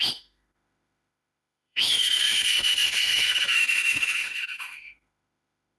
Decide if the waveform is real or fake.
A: fake